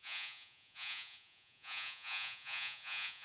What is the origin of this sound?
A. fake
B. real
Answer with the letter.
A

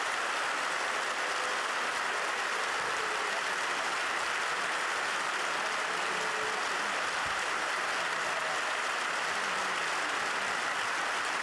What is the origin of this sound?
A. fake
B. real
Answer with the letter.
B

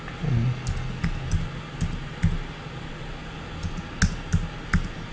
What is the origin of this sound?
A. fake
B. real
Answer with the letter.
B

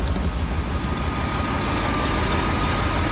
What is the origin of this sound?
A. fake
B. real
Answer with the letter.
B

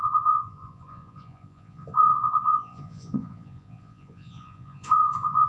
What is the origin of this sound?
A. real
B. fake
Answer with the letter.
B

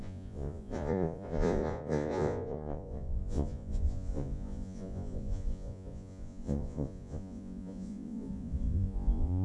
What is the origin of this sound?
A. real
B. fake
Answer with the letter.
B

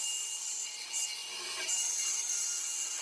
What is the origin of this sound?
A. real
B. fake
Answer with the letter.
A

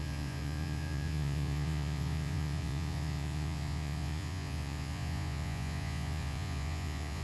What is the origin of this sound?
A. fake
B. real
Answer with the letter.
A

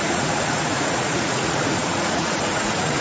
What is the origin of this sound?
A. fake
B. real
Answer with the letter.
A